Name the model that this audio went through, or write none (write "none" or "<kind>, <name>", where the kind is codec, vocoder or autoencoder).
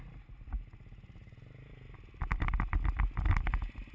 none